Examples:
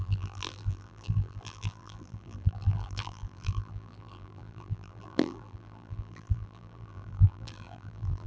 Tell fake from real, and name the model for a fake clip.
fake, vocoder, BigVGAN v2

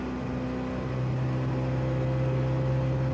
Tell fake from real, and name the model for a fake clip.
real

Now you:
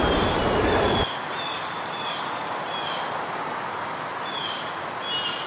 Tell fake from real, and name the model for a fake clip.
real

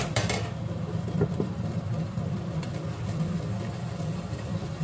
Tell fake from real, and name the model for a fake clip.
fake, vocoder, BigVGAN v2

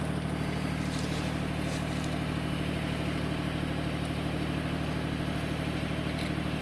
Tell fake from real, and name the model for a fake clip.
real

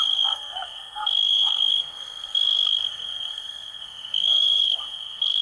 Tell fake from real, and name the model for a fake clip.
fake, codec, SNAC